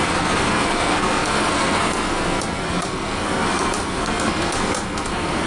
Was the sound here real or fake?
fake